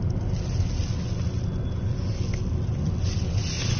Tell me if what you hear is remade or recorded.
recorded